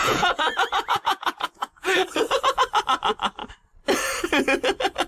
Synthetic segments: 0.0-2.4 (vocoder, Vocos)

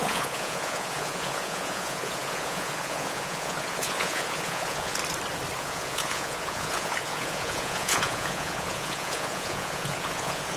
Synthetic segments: 0.0-5.0 (vocoder, Vocos); 5.6-10.6

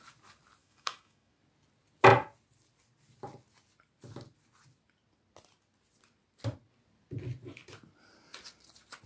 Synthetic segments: 0.6-1.3 (autoencoder, DAC-VAE)